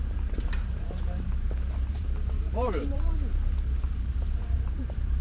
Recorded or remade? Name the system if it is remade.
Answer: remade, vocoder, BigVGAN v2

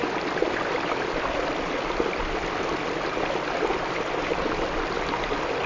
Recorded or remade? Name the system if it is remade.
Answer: recorded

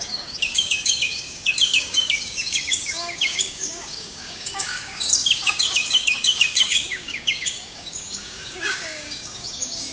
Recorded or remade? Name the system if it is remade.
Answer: remade, codec, DAC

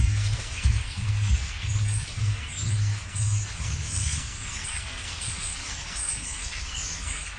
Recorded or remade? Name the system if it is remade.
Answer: remade, codec, SNAC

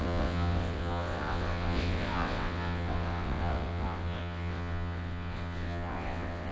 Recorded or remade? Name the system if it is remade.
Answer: remade, vocoder, WaveNeXt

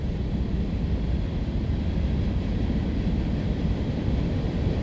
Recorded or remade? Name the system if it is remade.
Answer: recorded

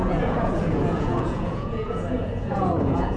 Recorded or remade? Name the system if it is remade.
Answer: remade, vocoder, Vocos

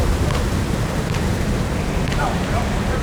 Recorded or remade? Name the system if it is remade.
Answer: remade, vocoder, BigVGAN v2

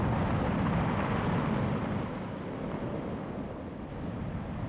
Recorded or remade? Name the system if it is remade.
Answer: recorded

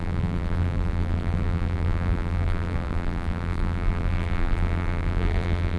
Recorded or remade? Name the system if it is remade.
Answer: remade, vocoder, BigVGAN v2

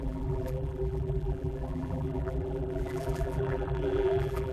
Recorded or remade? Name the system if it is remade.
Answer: remade, vocoder, BigVGAN v2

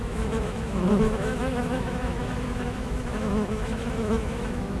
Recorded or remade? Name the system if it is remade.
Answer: remade, autoencoder, DAC-VAE